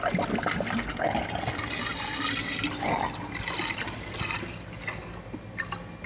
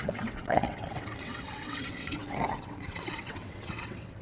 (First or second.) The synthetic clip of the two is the second